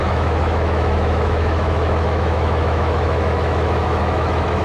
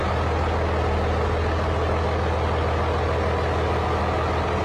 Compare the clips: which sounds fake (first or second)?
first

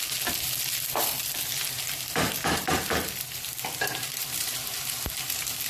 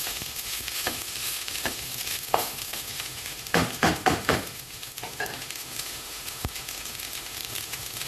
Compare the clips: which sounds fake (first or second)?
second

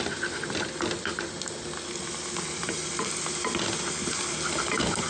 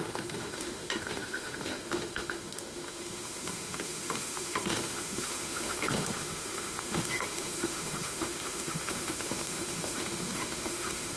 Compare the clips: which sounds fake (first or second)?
second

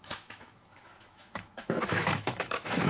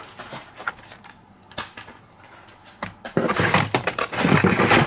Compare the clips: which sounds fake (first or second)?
first